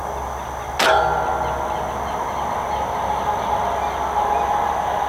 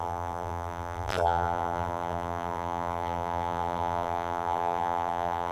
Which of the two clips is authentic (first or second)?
first